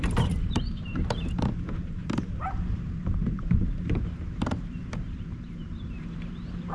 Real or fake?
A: fake